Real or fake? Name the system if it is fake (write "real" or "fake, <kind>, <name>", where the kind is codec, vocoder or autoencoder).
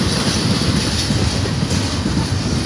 real